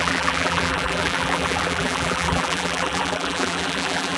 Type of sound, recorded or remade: remade